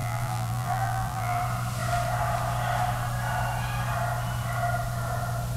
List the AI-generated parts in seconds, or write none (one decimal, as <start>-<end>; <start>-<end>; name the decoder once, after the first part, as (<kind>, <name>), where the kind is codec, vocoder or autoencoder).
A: 0.0-1.4 (vocoder, BigVGAN v2)